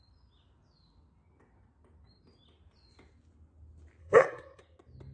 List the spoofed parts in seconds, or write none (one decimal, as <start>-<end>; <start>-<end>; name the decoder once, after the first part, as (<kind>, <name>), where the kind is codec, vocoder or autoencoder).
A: 4.0-4.6 (codec, SNAC)